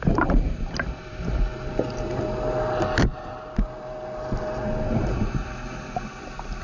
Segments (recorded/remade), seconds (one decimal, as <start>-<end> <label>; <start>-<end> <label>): 0.0-6.6 recorded